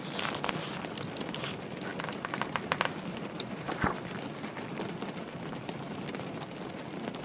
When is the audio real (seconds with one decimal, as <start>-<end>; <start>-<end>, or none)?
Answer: 0.0-7.2